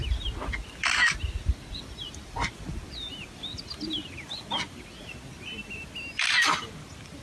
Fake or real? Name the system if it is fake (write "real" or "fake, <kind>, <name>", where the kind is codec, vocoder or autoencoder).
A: real